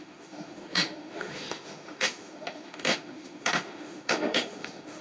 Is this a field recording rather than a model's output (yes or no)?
no